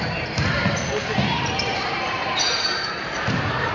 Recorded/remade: remade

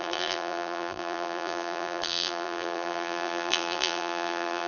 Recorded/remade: remade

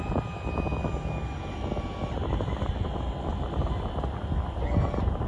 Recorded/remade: recorded